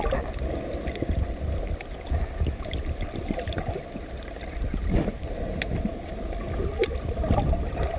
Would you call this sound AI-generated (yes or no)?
no